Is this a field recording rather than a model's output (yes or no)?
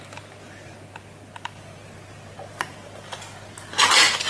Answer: yes